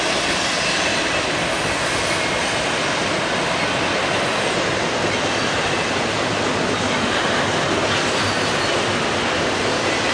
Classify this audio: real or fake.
real